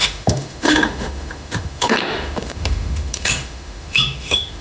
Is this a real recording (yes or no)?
no